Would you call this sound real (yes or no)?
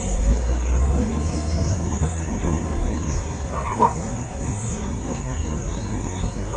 no